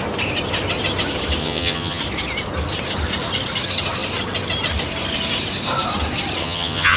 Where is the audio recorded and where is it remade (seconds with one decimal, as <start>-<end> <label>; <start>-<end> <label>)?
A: 0.0-1.4 recorded; 1.4-2.0 remade; 2.0-6.4 recorded; 6.4-7.0 remade